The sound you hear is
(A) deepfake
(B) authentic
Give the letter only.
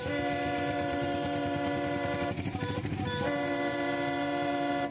A